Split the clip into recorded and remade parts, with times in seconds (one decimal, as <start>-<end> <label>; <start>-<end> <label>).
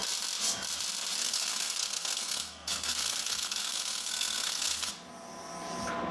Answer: 0.0-1.2 recorded; 1.2-4.9 remade; 4.9-6.1 recorded